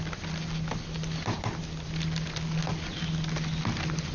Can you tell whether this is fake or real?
real